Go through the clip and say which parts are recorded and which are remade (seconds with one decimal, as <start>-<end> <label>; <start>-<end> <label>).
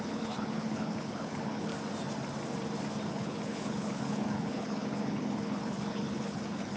0.0-1.7 remade; 1.7-3.1 recorded; 3.1-6.8 remade